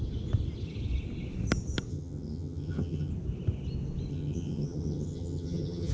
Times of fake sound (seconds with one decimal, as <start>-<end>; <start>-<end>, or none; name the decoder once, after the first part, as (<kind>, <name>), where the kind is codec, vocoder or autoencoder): 1.9-3.1 (vocoder, HiFi-GAN); 4.1-5.9